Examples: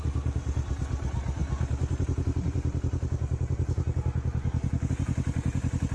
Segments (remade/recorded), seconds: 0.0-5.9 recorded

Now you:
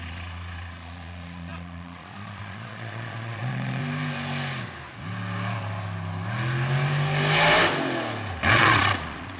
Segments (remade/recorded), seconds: 0.0-3.8 remade; 3.8-8.5 recorded; 8.5-9.4 remade

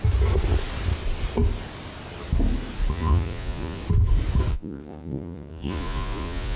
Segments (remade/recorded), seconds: 0.0-2.9 recorded; 2.9-3.8 remade; 3.8-4.5 recorded; 4.5-6.6 remade

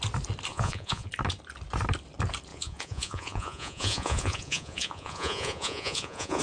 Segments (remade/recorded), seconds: 0.0-0.5 recorded; 0.5-1.1 remade; 1.1-2.5 recorded; 2.5-6.4 remade

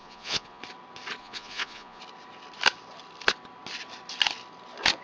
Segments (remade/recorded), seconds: 0.0-0.6 remade; 0.6-1.2 recorded; 1.2-2.0 remade; 2.0-5.0 recorded

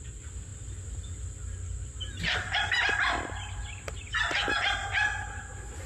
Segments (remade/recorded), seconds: 0.0-5.9 recorded

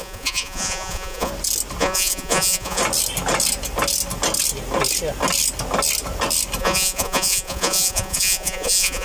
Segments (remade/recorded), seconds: 0.0-1.3 remade; 1.3-1.8 recorded; 1.8-2.8 remade; 2.8-6.6 recorded; 6.6-9.0 remade